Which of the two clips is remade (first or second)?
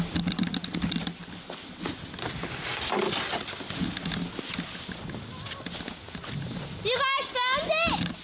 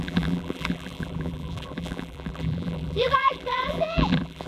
second